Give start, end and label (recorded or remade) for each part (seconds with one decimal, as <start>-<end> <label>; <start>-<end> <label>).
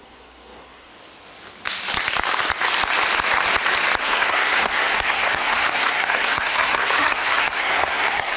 0.0-0.9 remade; 0.9-4.0 recorded; 4.0-8.4 remade